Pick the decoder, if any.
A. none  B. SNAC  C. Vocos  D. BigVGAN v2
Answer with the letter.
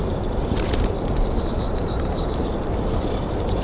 D